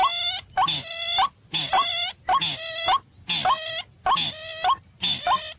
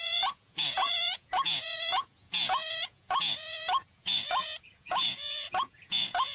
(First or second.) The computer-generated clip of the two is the second